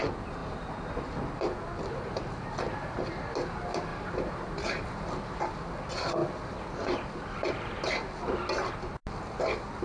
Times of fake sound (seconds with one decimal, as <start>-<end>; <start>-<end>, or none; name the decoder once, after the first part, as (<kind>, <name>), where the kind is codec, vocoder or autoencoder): 3.9-5.4 (vocoder, BigVGAN v2)